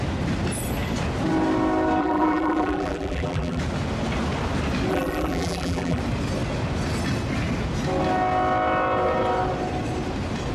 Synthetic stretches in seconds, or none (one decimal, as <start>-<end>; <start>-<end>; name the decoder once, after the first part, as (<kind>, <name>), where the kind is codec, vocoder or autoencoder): 2.0-3.6 (vocoder, BigVGAN v2); 4.9-6.0